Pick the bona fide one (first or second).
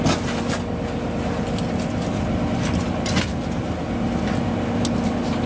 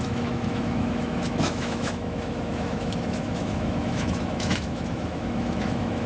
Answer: first